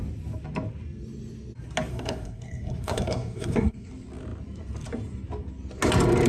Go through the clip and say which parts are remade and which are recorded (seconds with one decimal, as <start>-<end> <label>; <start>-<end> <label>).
0.0-1.9 recorded; 1.9-3.9 remade; 3.9-6.3 recorded